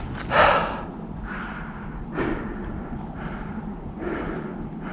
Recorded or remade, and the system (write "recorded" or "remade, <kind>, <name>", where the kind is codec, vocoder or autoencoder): recorded